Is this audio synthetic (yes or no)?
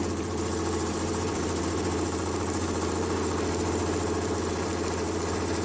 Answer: yes